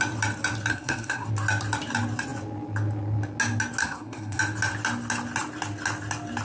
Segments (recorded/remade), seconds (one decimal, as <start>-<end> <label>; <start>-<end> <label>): 0.0-0.7 recorded; 0.7-1.3 remade; 1.3-3.8 recorded; 3.8-4.4 remade; 4.4-6.4 recorded